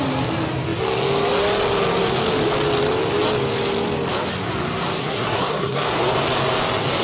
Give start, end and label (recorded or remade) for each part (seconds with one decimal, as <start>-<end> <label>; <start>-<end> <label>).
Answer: 0.0-5.0 recorded; 5.0-6.0 remade; 6.0-7.0 recorded